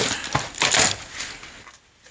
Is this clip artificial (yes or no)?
no